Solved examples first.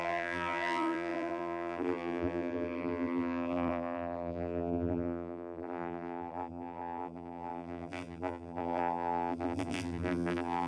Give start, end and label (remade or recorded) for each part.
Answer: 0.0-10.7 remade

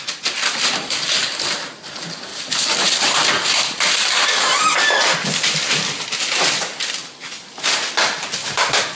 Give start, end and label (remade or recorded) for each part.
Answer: 0.0-2.3 recorded; 2.3-6.5 remade; 6.5-9.0 recorded